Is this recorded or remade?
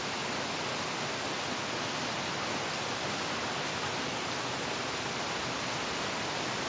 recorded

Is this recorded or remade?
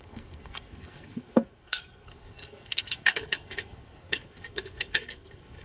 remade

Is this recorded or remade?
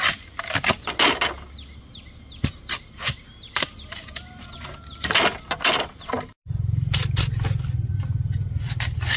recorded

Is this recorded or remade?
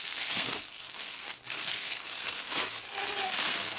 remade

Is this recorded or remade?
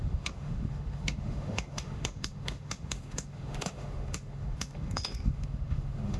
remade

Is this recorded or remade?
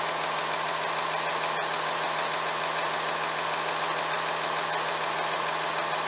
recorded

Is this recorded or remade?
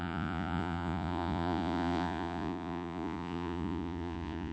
remade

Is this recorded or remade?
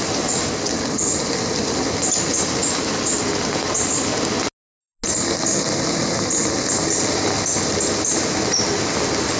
recorded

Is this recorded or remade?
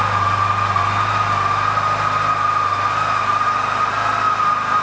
recorded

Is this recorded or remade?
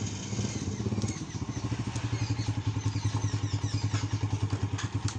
recorded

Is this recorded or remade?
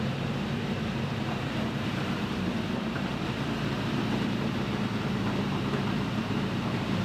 remade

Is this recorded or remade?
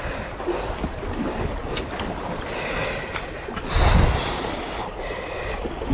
recorded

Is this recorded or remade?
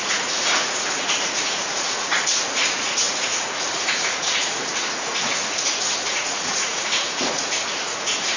remade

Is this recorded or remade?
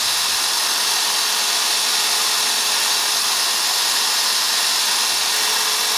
recorded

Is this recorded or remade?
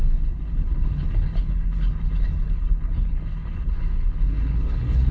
remade